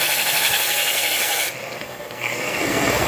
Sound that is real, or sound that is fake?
fake